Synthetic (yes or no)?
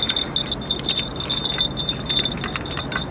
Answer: no